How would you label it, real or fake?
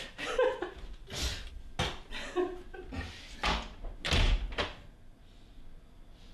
real